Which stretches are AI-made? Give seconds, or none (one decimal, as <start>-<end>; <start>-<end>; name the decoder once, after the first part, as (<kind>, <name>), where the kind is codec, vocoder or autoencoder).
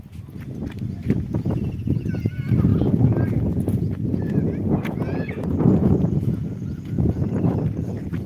2.7-7.4 (vocoder, Vocos)